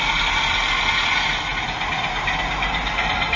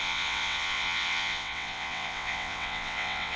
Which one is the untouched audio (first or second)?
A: first